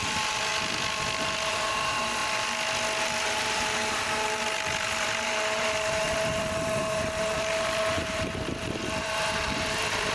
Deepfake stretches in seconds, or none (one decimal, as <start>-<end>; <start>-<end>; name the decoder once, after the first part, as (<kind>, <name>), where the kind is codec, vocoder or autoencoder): 0.0-0.5 (vocoder, BigVGAN v2); 1.5-2.2; 3.0-10.1